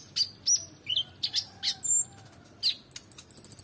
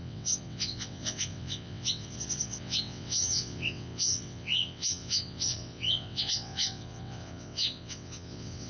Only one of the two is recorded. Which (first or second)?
first